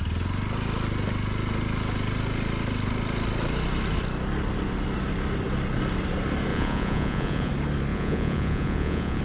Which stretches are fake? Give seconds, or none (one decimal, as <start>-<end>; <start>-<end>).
6.5-7.5; 7.9-9.2